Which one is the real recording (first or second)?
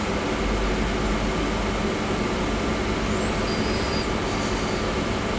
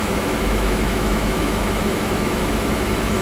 first